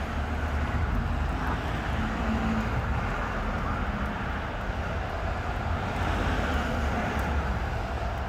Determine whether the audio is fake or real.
real